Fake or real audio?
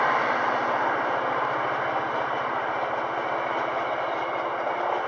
real